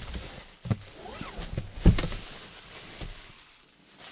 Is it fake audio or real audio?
real